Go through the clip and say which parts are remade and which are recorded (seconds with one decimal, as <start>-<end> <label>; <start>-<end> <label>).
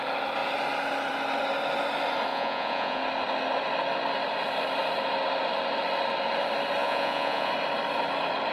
0.0-2.3 recorded; 2.3-3.0 remade; 3.0-6.8 recorded; 6.8-7.5 remade; 7.5-8.5 recorded